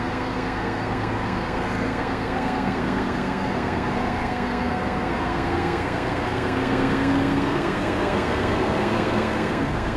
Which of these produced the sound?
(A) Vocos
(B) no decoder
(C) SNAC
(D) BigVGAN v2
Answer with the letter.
C